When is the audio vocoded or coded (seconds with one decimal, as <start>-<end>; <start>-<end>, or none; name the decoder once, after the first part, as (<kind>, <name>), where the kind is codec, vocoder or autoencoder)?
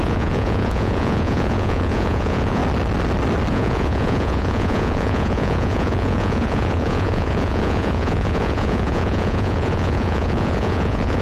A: 0.0-2.6 (vocoder, Vocos); 3.5-11.2